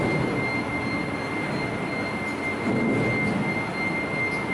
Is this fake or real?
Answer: real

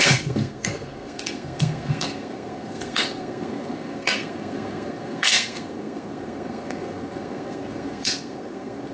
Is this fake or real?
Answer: fake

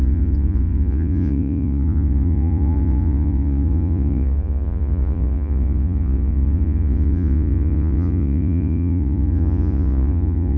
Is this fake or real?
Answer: fake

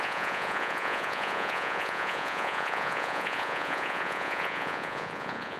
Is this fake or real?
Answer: fake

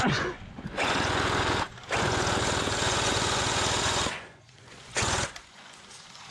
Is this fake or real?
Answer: fake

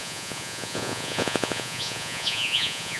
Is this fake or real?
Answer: fake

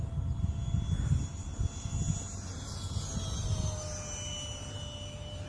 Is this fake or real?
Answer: real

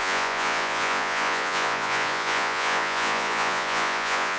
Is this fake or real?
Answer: fake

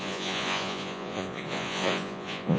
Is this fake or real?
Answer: fake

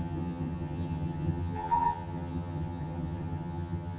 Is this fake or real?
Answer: fake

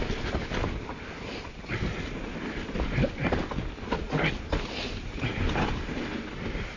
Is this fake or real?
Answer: real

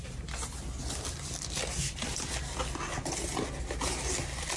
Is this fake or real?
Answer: real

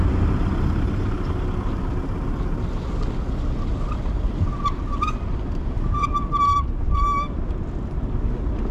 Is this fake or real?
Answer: real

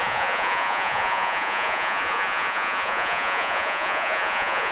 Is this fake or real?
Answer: fake